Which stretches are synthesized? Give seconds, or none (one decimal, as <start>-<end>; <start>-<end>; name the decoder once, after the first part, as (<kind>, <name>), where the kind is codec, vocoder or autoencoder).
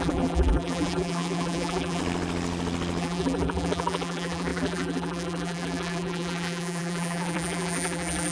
0.0-2.0 (vocoder, BigVGAN v2); 3.0-8.3